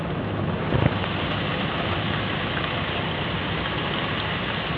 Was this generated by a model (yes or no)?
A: no